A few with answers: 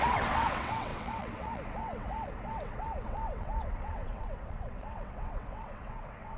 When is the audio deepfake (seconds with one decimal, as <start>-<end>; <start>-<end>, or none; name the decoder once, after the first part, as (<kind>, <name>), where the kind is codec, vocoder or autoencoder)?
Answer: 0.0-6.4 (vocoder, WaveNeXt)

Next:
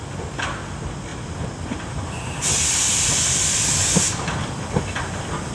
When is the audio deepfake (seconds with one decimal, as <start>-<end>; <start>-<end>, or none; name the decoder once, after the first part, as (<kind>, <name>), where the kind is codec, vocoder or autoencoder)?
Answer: none

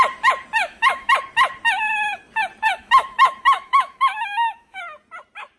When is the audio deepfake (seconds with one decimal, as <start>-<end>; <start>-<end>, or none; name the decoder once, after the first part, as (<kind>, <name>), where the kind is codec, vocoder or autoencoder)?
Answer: 0.6-1.1 (autoencoder, DAC-VAE); 2.7-4.8

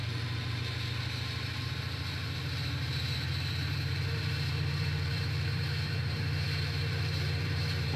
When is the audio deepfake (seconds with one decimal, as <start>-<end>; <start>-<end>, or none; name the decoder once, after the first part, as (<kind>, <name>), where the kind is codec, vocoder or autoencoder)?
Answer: 1.7-8.0 (vocoder, BigVGAN v2)

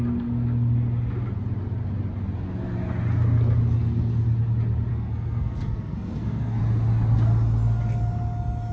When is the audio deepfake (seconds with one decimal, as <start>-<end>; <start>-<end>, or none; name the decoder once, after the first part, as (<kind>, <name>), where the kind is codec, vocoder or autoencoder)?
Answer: 4.9-6.6 (codec, SNAC)